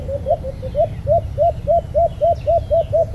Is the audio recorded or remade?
recorded